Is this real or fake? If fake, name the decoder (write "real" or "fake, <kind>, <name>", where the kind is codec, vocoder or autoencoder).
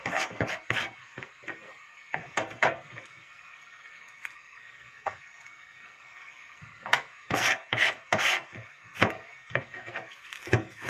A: fake, codec, SNAC